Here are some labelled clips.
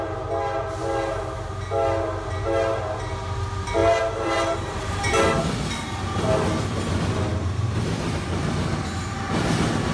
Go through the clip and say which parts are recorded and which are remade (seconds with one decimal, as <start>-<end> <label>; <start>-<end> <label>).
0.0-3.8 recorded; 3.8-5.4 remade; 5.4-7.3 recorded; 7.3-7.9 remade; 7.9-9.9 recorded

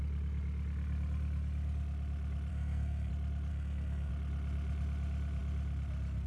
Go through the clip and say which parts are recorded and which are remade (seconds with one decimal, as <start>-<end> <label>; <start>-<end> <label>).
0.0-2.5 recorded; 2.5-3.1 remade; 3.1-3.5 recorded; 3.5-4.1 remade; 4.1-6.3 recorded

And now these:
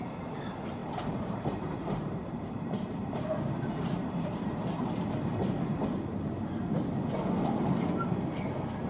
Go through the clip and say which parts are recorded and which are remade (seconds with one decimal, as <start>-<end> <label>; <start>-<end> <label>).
0.0-0.8 recorded; 0.8-5.3 remade; 5.3-8.9 recorded